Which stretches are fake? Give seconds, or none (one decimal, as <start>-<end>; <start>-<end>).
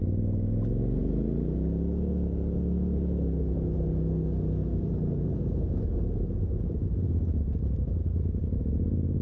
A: 4.6-8.6